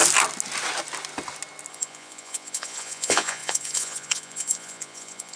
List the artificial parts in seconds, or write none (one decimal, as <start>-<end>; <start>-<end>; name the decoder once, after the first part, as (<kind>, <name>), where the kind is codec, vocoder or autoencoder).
1.7-5.4 (vocoder, Vocos)